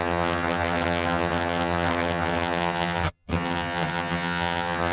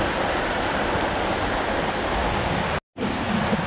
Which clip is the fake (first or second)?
first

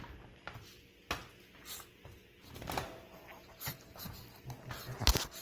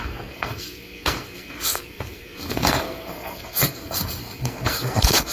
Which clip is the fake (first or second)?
second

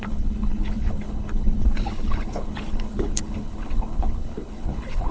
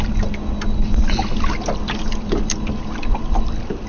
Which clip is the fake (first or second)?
first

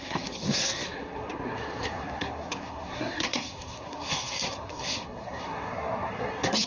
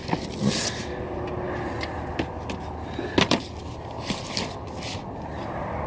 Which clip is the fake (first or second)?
first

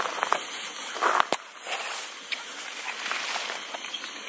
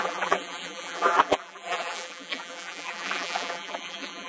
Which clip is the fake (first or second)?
second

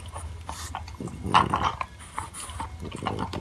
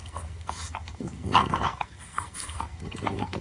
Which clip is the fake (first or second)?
second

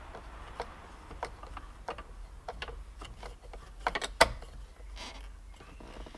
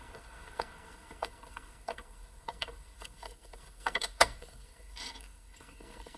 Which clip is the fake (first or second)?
second